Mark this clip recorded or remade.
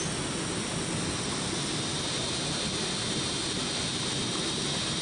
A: recorded